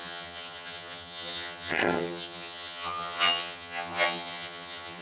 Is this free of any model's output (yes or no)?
no